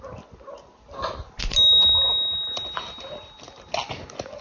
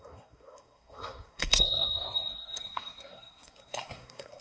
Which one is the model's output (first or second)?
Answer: second